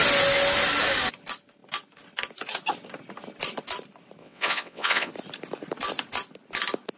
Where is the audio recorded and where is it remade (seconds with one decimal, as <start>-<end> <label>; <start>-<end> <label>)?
0.0-4.2 recorded; 4.2-5.1 remade; 5.1-7.0 recorded